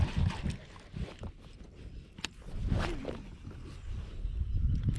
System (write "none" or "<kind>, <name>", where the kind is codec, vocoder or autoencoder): none